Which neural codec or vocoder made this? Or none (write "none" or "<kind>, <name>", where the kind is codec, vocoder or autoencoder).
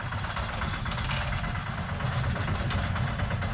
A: none